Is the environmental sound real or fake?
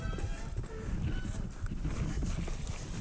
real